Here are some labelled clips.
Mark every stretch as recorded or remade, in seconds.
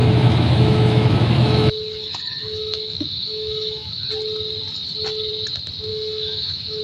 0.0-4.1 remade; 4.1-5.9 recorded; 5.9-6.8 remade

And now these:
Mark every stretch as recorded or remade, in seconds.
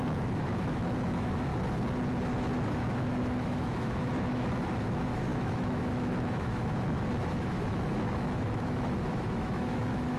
0.0-1.5 remade; 1.5-2.7 recorded; 2.7-10.2 remade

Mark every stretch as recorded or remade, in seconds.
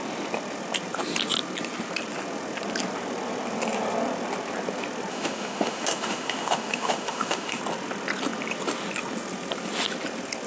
0.0-5.1 recorded; 5.1-7.6 remade; 7.6-10.5 recorded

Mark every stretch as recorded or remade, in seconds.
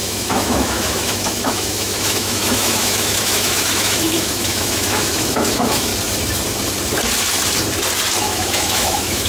0.0-5.9 remade; 5.9-8.2 recorded; 8.2-9.3 remade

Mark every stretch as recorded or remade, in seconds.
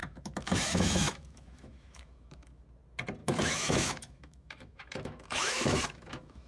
0.0-2.6 remade; 2.6-3.2 recorded; 3.2-6.5 remade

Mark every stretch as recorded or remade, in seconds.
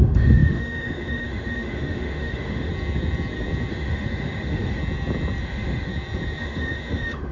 0.0-2.7 remade; 2.7-3.7 recorded; 3.7-4.8 remade; 4.8-5.4 recorded; 5.4-5.9 remade; 5.9-6.4 recorded; 6.4-7.3 remade